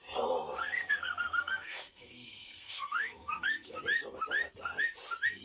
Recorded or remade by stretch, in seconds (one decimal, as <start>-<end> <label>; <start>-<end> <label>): 0.0-0.6 recorded; 0.6-3.8 remade; 3.8-5.4 recorded